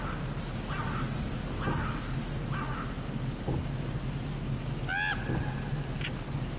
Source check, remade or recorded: recorded